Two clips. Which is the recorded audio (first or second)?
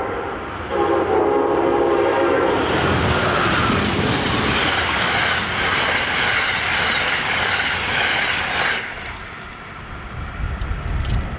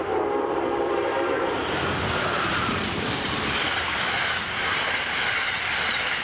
first